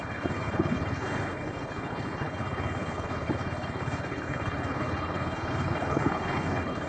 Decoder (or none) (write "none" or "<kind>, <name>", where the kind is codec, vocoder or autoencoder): codec, HILCodec